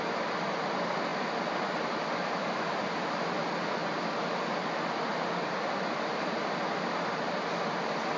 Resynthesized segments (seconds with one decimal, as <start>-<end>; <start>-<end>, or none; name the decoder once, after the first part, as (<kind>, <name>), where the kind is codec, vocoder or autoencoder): none